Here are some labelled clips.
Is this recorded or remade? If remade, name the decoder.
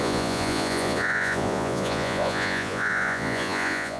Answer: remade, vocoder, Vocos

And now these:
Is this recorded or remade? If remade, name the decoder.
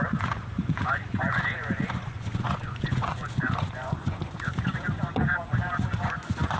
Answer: remade, vocoder, Vocos